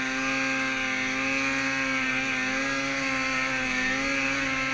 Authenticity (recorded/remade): recorded